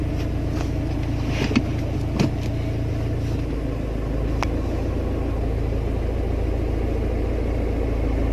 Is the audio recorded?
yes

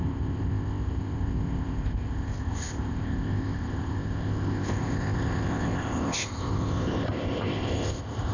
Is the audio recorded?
no